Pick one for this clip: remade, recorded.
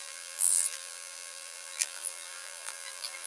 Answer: remade